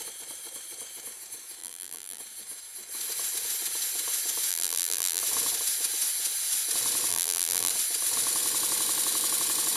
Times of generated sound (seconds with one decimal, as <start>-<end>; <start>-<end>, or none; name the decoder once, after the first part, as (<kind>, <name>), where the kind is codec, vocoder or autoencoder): 1.6-2.2 (vocoder, BigVGAN v2); 4.5-5.2; 7.1-7.7